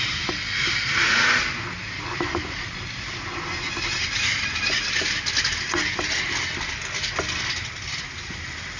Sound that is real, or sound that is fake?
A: real